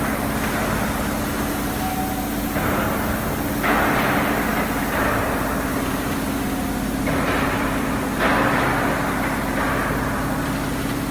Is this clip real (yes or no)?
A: yes